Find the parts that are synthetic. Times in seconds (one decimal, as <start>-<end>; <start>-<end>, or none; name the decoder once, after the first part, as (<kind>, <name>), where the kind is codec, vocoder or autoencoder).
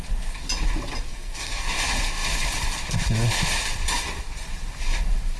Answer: 1.1-1.8 (codec, SNAC)